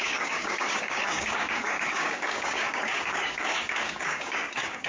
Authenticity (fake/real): fake